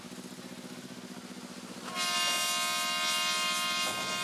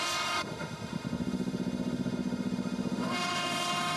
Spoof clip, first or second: second